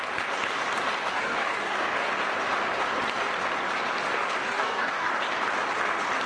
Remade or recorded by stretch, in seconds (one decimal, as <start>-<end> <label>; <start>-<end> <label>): 0.0-1.0 recorded; 1.0-2.1 remade; 2.1-4.4 recorded; 4.4-5.1 remade; 5.1-6.3 recorded